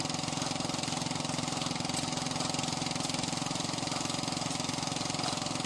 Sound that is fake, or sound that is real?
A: real